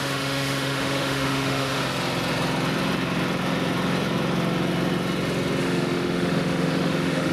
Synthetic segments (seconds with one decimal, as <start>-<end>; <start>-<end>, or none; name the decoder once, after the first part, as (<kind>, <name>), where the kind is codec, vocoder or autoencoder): 0.0-1.8 (autoencoder, DAC-VAE); 5.6-7.3